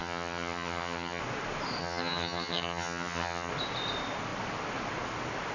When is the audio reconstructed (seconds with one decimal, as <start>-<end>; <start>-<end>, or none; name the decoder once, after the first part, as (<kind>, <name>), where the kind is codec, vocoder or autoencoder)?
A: 0.0-1.2 (vocoder, HiFi-GAN); 1.8-3.5